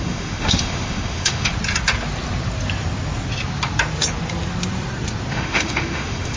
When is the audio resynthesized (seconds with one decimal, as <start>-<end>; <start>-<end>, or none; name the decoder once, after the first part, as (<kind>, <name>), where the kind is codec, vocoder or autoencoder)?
0.0-1.5 (autoencoder, DAC-VAE); 5.3-6.4